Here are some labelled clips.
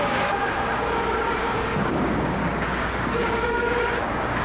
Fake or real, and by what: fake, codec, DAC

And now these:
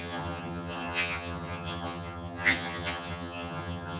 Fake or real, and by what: fake, vocoder, HiFi-GAN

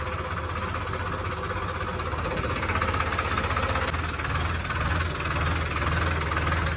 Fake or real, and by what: real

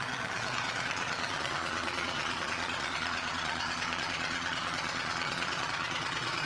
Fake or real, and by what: fake, vocoder, Vocos